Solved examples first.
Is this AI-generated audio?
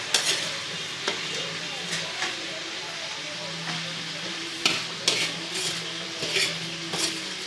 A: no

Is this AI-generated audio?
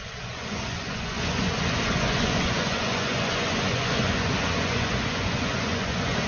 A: yes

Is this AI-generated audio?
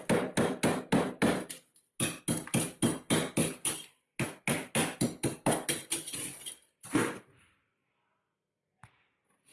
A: no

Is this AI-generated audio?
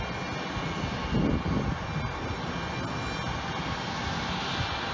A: no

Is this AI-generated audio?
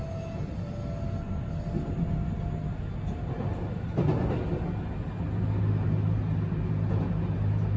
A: no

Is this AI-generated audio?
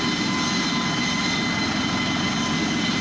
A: no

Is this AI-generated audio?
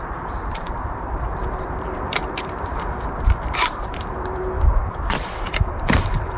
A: yes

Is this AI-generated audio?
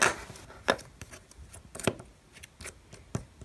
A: no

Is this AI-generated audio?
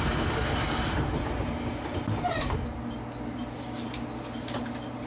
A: no